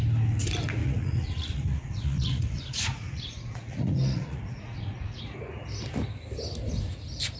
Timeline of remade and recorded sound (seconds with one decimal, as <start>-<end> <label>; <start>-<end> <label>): 0.0-0.8 recorded; 0.8-5.2 remade; 5.2-7.4 recorded